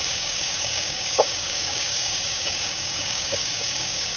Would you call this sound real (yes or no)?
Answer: no